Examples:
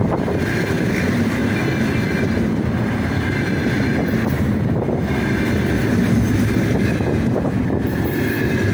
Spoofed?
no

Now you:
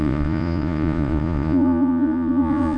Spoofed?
yes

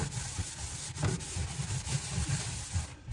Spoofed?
no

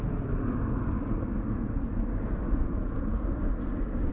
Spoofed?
no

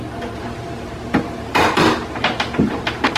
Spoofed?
no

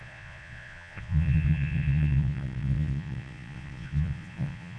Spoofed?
yes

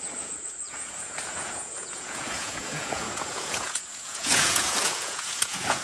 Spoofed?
yes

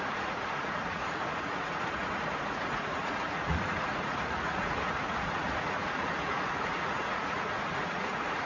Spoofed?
yes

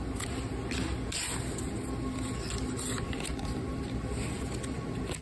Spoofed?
no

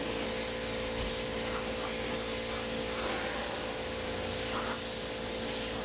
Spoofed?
no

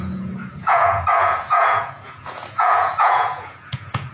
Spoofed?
yes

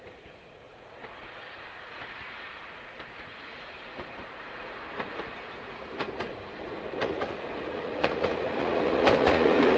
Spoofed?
yes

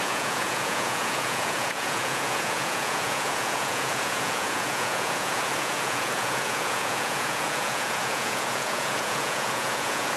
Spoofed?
yes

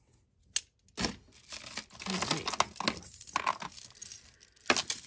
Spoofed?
no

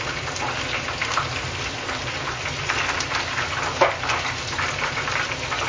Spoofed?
no